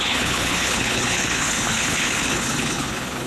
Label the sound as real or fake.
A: fake